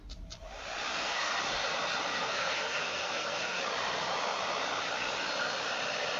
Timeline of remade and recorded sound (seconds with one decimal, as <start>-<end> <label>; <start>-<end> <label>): 0.0-0.9 recorded; 0.9-1.4 remade; 1.4-2.1 recorded; 2.1-3.6 remade; 3.6-6.2 recorded